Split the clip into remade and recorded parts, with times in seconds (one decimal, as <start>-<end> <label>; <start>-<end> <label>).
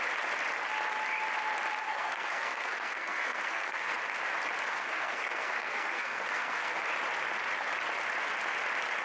0.0-1.9 recorded; 1.9-4.0 remade; 4.0-4.7 recorded; 4.7-6.8 remade; 6.8-9.0 recorded